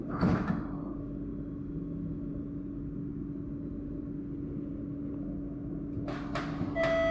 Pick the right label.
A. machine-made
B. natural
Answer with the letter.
B